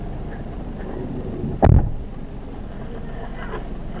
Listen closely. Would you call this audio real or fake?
real